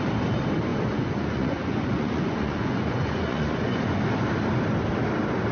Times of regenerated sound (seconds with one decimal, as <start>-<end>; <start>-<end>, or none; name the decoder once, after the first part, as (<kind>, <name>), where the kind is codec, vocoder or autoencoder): 0.7-4.0 (vocoder, Vocos)